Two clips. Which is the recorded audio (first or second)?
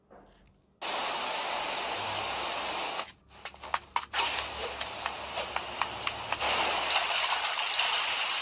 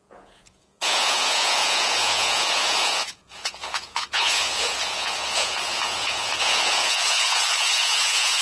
first